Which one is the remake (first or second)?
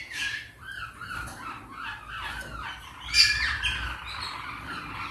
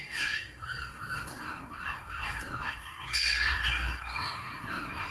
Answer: second